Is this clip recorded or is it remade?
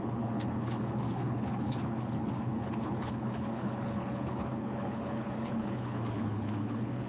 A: remade